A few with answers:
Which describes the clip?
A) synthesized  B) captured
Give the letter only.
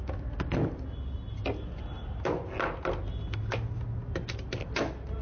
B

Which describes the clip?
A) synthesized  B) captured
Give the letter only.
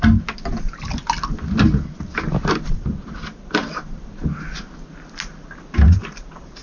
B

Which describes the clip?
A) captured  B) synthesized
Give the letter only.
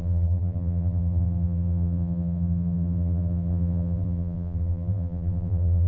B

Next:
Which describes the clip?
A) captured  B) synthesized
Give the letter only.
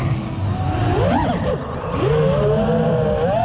A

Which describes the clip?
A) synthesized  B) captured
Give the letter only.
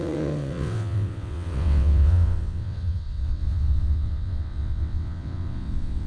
A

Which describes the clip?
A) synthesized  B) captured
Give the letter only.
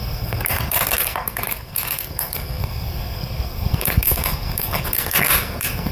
A